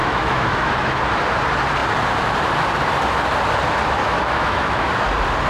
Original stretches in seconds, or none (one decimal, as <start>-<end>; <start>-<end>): 1.0-4.0; 4.9-5.5